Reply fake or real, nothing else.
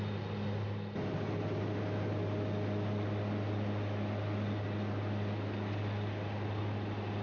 real